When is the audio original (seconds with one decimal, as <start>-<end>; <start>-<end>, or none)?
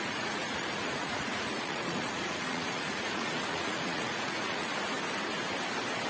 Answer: 4.7-6.1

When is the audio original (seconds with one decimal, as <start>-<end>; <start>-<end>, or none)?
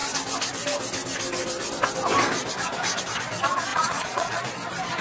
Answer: 0.0-3.7; 4.5-5.0